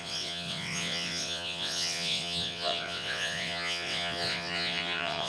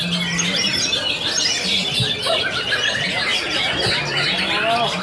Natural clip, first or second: second